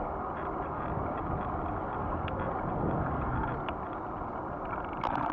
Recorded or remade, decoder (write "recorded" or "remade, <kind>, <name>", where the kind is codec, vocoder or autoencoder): recorded